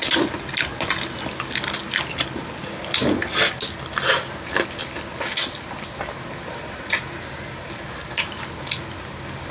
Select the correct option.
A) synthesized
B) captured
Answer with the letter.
B